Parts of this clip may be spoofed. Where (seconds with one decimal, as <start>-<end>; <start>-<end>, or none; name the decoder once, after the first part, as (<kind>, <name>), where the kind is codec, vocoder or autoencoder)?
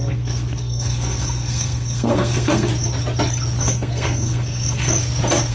0.0-2.7 (codec, SNAC); 3.6-4.9